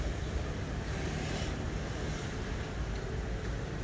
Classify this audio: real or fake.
real